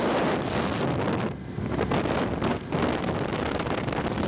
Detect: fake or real real